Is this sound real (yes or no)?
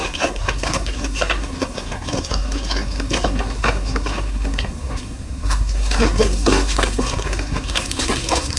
no